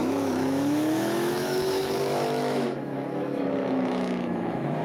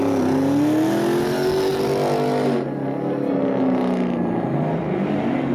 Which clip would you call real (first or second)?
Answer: second